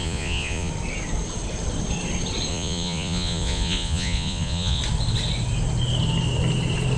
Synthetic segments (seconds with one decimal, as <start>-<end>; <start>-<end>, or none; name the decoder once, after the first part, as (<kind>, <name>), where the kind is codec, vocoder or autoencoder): 0.0-0.7 (vocoder, Vocos); 2.5-4.8